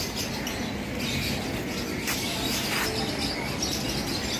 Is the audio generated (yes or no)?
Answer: no